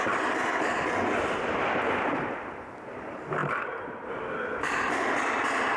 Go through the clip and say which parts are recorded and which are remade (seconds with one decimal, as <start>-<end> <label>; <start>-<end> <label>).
0.0-5.8 recorded